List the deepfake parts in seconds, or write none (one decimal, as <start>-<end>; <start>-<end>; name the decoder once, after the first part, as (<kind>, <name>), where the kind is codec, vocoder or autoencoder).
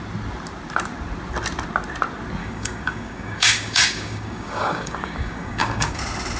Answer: 2.4-6.0 (codec, DAC)